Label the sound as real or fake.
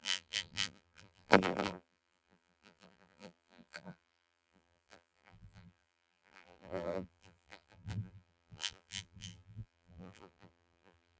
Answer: fake